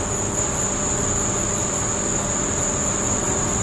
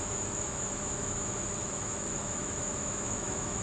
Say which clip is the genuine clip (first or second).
first